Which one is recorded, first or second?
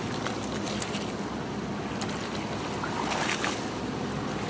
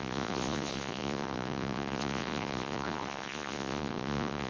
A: first